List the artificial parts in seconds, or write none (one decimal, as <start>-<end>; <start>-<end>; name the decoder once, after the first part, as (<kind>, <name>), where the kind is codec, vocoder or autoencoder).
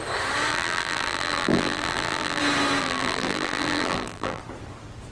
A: 0.5-2.4 (vocoder, BigVGAN v2); 2.8-4.4